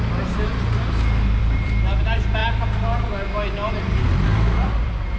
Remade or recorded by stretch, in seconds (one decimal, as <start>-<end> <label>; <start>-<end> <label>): 0.0-2.4 remade; 2.4-3.7 recorded; 3.7-5.2 remade